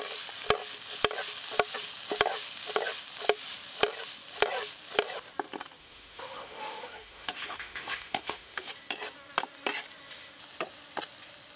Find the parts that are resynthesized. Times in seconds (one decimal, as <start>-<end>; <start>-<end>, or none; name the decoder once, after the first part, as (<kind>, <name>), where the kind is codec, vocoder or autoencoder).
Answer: 5.8-8.7 (autoencoder, DAC-VAE)